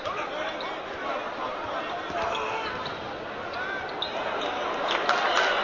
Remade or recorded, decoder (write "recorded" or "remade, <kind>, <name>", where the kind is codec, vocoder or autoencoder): recorded